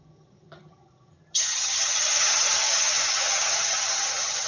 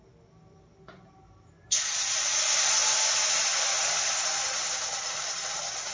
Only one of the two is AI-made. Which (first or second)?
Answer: first